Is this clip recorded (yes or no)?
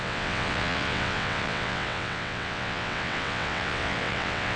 no